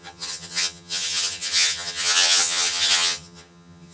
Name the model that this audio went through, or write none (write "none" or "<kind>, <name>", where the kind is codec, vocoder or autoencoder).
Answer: vocoder, HiFi-GAN